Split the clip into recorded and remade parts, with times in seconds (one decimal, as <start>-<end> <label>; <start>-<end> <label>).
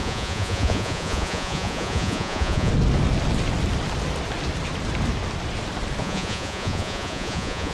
0.0-2.7 remade; 2.7-6.0 recorded; 6.0-7.7 remade